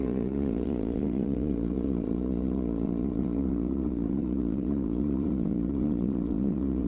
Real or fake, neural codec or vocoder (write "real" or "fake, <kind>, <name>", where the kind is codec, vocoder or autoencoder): fake, vocoder, Vocos